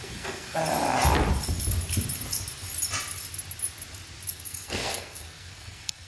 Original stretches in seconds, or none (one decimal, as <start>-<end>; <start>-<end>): 0.6-4.3